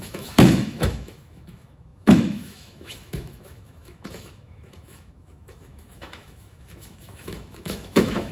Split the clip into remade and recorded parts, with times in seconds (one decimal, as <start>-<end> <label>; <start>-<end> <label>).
0.0-8.3 remade